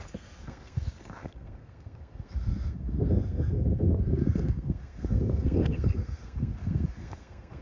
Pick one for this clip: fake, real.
fake